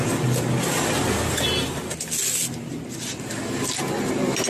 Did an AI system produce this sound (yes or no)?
no